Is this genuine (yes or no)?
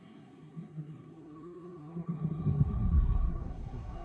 no